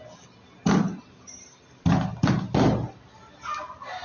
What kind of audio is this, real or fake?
real